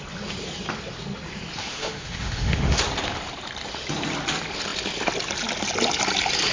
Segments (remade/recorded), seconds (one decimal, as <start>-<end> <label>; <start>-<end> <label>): 0.0-1.6 recorded; 1.6-2.8 remade; 2.8-6.5 recorded